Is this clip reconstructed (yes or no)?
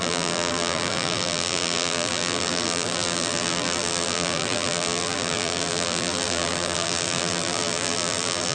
yes